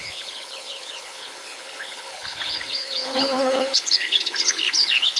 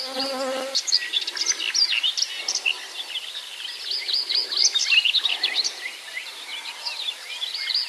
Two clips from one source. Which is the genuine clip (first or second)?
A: second